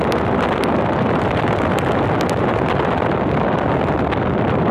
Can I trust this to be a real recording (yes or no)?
yes